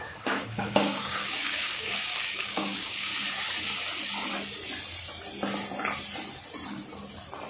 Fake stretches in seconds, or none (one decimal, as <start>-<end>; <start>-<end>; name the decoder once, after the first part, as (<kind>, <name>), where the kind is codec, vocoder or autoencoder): 0.0-3.1 (codec, DAC)